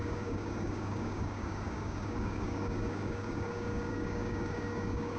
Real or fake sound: fake